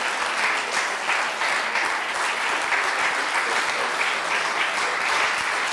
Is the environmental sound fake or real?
real